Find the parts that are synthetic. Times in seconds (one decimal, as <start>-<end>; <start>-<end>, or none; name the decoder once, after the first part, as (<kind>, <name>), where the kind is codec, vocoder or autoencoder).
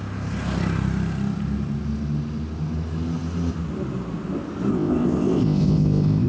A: 4.7-6.3 (codec, ZipCodec)